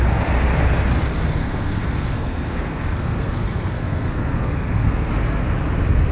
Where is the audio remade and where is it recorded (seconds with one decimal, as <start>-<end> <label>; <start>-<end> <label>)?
0.0-1.4 recorded; 1.4-5.1 remade; 5.1-6.1 recorded